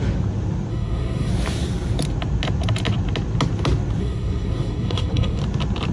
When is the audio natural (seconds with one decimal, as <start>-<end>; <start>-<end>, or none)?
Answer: 0.0-0.7; 1.3-4.0; 5.4-5.9